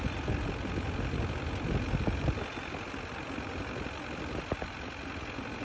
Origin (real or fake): real